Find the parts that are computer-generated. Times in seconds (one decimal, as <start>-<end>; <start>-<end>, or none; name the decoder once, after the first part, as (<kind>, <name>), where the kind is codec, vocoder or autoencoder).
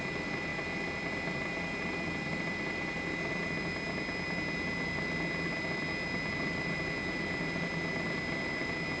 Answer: none